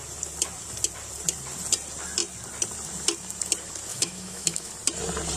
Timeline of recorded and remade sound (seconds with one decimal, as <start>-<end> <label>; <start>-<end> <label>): 0.0-3.9 recorded; 3.9-4.7 remade; 4.7-5.4 recorded